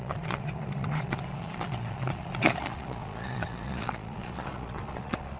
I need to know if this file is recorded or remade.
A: remade